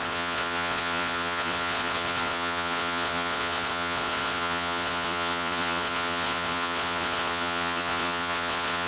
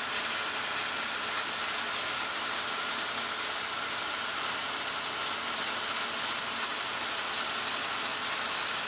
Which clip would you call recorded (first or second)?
second